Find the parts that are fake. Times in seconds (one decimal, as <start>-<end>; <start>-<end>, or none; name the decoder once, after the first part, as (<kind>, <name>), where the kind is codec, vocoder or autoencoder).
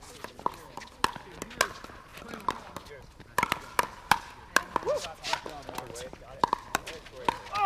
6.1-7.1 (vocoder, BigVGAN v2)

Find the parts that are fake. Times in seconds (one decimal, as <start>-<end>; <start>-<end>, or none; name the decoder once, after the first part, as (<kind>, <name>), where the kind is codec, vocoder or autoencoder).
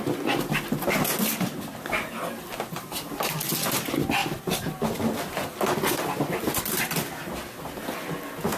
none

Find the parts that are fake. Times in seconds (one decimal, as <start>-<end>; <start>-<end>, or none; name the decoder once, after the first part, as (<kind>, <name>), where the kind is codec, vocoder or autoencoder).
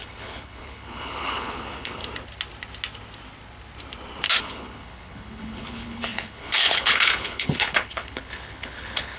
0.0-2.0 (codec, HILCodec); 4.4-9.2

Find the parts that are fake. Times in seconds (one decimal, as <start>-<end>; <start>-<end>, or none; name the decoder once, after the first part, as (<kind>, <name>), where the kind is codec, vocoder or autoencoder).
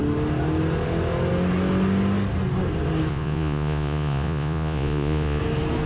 3.1-5.4 (vocoder, Vocos)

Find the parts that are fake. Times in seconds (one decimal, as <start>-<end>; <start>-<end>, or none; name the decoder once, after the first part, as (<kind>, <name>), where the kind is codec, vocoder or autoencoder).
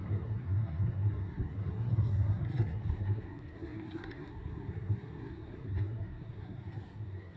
0.0-7.4 (codec, SNAC)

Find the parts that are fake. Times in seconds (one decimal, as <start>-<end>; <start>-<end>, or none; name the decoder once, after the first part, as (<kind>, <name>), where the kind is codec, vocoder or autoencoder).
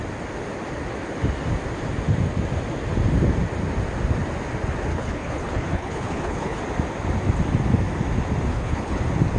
4.9-6.6 (codec, HILCodec); 8.5-9.0